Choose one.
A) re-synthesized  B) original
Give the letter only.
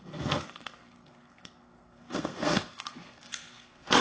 A